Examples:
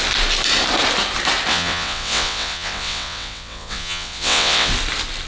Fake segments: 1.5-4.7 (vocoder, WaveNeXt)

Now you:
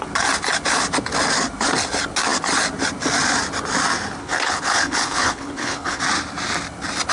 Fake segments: 4.2-6.0 (codec, HILCodec)